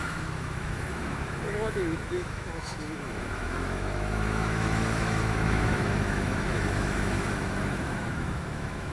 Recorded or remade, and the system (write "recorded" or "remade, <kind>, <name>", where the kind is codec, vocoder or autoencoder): remade, autoencoder, DAC-VAE